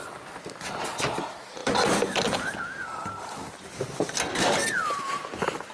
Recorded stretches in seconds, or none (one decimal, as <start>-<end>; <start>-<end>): 0.6-1.6; 5.0-5.7

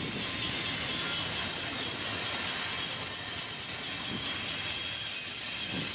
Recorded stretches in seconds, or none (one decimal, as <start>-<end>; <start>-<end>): 0.0-5.9

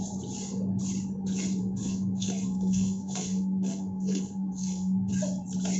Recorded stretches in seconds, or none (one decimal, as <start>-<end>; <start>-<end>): 0.0-1.6; 5.1-5.8

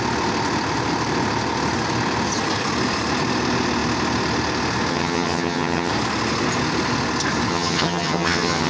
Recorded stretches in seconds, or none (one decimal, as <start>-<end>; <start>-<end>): 0.0-4.9; 5.9-7.5

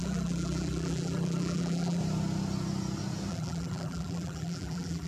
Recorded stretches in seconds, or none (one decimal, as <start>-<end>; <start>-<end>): 2.0-3.3